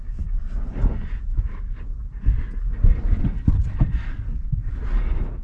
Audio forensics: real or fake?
real